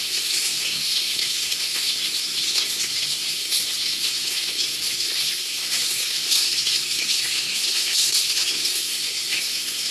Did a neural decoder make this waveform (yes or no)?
yes